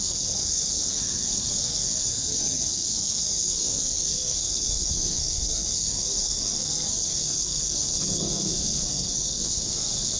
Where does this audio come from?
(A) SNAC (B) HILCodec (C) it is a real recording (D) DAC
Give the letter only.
A